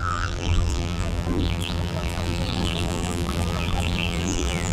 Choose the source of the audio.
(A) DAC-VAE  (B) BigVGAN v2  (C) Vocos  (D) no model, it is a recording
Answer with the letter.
B